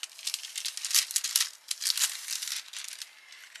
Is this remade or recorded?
recorded